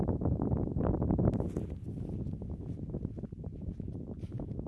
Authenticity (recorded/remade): recorded